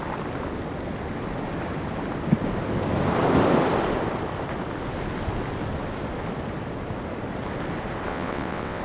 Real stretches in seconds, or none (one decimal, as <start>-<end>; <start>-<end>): 0.0-8.1